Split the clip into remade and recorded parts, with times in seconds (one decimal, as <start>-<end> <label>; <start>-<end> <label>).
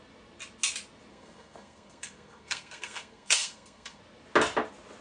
0.0-1.1 recorded; 1.1-4.0 remade; 4.0-5.0 recorded